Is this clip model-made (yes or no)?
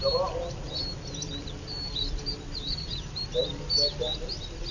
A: no